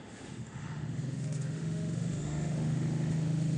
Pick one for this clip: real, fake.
fake